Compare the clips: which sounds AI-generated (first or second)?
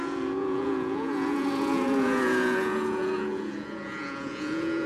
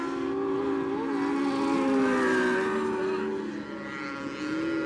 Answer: first